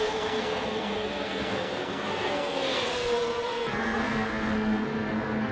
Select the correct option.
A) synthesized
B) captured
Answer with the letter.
A